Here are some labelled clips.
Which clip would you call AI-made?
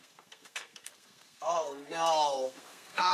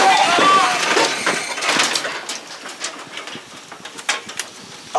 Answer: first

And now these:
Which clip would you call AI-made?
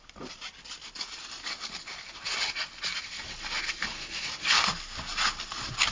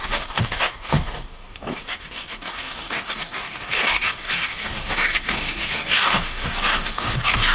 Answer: second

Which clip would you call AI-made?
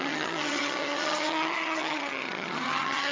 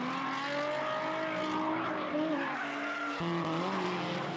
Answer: first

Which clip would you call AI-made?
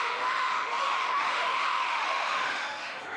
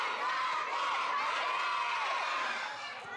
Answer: first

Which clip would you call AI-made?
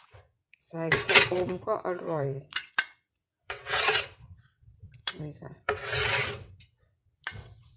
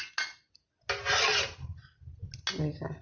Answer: first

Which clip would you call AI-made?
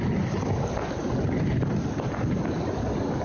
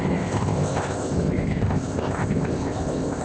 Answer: second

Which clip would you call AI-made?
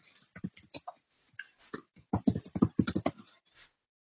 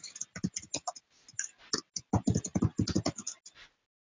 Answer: first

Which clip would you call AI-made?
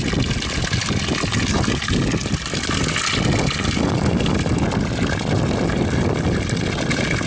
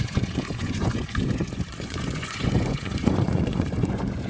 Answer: second